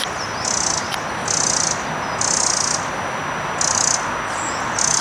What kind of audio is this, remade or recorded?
recorded